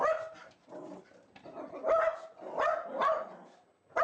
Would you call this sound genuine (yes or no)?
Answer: yes